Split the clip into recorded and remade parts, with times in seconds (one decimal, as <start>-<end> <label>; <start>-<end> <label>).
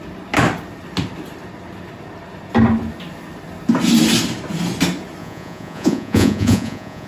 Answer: 0.0-5.2 recorded; 5.2-7.1 remade